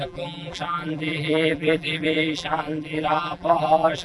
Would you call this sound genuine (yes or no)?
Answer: no